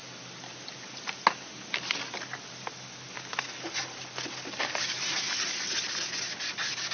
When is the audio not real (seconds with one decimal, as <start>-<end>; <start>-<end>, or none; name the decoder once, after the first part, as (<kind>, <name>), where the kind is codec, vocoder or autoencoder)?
none